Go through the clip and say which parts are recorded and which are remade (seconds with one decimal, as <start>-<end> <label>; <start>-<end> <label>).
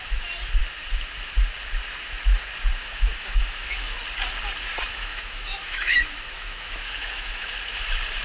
0.0-2.8 recorded; 2.8-4.0 remade; 4.0-4.9 recorded; 4.9-7.5 remade; 7.5-8.2 recorded